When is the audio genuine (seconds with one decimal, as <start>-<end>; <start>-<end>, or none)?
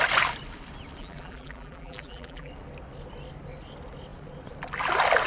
0.0-1.0; 2.5-5.3